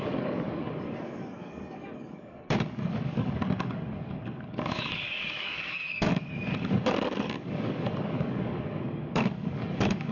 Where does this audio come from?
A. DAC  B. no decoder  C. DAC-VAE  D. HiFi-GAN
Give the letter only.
A